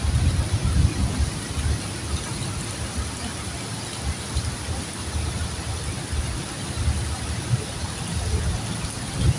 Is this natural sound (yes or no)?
yes